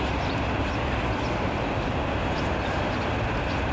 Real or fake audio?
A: real